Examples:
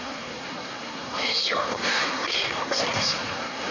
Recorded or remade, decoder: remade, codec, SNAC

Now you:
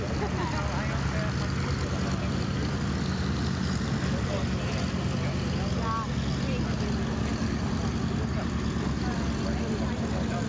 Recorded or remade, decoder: recorded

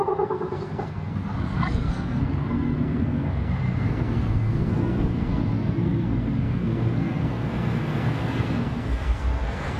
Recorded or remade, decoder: remade, codec, SNAC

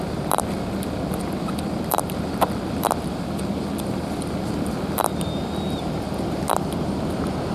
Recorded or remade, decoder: remade, vocoder, BigVGAN v2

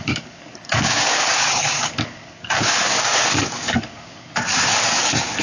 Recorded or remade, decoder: remade, codec, DAC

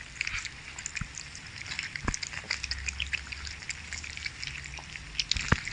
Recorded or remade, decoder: recorded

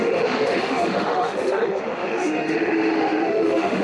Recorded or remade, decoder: remade, autoencoder, DAC-VAE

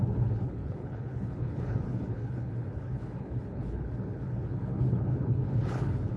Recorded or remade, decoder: remade, codec, HILCodec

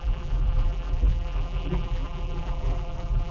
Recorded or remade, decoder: remade, vocoder, BigVGAN v2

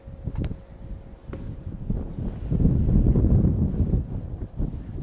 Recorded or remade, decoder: recorded